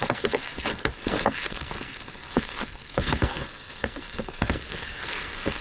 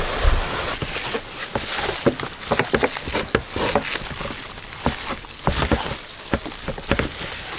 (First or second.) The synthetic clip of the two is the first